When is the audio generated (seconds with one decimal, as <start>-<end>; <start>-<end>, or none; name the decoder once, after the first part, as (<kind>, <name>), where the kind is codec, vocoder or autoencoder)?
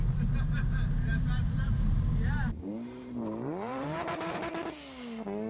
1.1-4.4 (vocoder, BigVGAN v2)